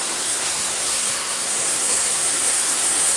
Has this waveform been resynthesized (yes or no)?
yes